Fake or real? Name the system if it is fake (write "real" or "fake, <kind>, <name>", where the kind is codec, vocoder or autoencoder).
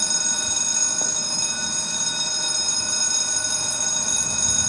real